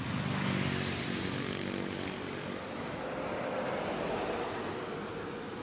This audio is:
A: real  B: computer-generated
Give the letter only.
A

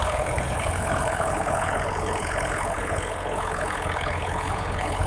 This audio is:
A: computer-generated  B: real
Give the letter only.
A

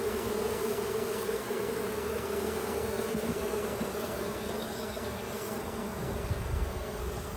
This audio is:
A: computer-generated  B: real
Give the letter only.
A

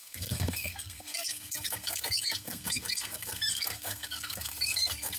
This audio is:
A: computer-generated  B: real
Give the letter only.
A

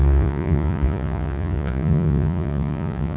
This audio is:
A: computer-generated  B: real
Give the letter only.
A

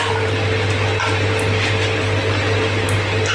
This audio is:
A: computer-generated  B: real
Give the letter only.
B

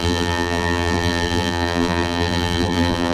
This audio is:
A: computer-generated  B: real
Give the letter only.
A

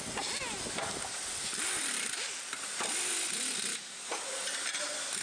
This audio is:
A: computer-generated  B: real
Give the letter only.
B